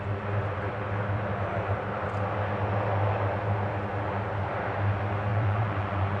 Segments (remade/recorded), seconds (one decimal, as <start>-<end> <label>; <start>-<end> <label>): 0.0-5.3 recorded; 5.3-6.2 remade